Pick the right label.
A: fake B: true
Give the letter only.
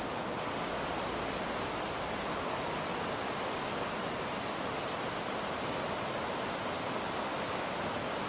B